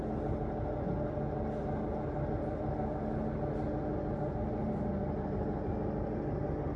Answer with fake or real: real